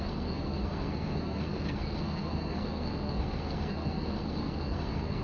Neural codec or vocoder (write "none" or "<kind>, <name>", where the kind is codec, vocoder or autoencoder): codec, SNAC